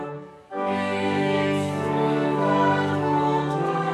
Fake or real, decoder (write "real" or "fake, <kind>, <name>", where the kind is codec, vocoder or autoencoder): fake, codec, DAC